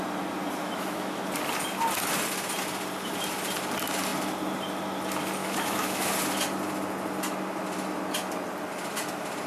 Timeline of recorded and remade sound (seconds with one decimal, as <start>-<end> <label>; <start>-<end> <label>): 0.0-0.6 recorded; 0.6-1.2 remade; 1.2-5.4 recorded; 5.4-6.1 remade; 6.1-9.5 recorded